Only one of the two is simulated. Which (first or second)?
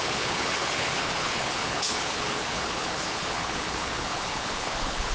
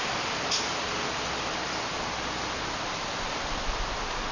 first